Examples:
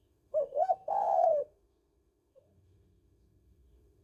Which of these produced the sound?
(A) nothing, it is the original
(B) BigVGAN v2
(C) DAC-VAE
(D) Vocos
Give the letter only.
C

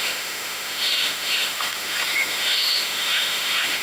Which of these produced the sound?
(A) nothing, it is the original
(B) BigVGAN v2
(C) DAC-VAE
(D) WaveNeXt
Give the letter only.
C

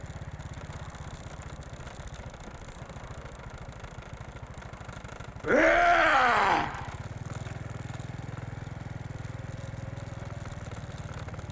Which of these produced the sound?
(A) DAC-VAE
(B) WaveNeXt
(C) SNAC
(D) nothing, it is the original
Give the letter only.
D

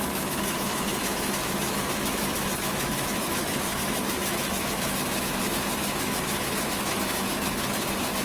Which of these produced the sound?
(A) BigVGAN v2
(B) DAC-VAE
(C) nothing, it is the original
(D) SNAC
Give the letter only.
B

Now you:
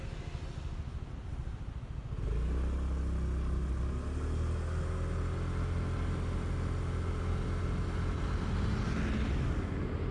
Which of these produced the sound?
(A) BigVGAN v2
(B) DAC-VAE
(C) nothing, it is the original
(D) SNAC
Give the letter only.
C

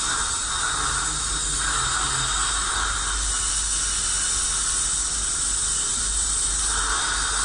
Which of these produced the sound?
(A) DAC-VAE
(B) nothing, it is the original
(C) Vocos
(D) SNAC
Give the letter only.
B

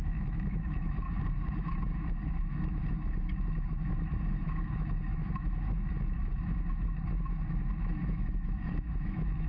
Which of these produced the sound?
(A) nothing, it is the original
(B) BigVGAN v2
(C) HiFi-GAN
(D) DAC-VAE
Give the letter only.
D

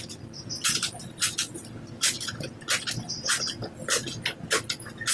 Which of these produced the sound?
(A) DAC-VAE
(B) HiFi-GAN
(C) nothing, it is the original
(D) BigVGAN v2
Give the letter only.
C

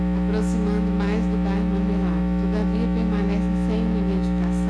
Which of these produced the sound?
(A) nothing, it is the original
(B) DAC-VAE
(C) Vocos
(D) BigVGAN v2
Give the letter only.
B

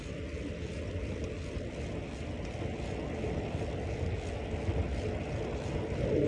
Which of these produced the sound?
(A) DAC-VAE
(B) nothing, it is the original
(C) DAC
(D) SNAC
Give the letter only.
B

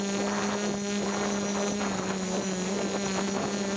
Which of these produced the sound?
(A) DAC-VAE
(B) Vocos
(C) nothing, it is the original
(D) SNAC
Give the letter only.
C